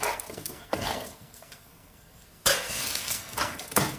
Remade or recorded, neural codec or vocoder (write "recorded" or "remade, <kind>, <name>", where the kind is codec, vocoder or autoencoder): remade, codec, SNAC